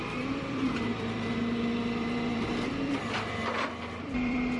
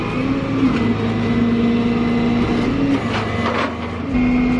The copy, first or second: first